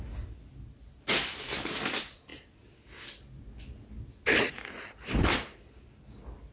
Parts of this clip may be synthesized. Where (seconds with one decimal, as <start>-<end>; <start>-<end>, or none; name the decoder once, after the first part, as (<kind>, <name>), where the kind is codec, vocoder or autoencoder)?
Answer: none

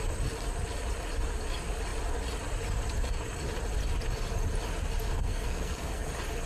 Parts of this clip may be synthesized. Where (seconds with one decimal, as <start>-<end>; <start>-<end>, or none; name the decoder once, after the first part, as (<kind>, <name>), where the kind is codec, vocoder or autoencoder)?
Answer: 5.0-6.1 (codec, SNAC)

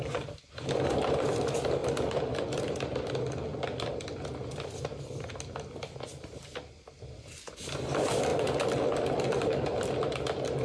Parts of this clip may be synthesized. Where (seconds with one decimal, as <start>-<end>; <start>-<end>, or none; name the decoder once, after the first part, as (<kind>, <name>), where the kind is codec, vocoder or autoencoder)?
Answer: none

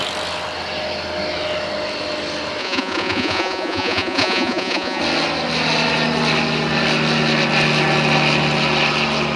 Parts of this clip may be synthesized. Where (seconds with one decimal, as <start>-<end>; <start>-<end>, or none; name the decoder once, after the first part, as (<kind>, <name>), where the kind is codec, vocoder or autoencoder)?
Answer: 2.6-5.0 (vocoder, Vocos)

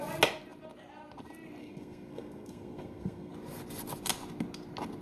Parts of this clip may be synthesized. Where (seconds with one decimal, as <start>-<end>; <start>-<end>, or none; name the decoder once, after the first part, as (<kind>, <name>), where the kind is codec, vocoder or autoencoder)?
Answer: 1.6-3.3 (codec, SNAC)

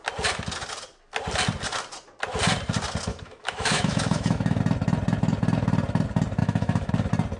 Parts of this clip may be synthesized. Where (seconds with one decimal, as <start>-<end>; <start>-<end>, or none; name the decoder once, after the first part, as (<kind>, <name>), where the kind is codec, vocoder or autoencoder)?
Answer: 3.1-4.6 (autoencoder, DAC-VAE); 6.4-6.9

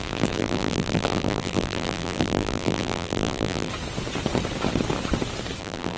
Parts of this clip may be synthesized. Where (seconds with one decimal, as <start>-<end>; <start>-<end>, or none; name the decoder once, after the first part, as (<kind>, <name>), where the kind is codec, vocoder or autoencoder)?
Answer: 0.0-3.7 (vocoder, BigVGAN v2); 5.6-6.0